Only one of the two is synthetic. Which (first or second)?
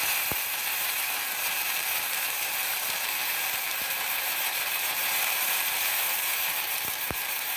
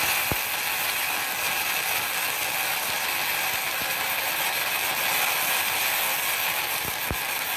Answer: first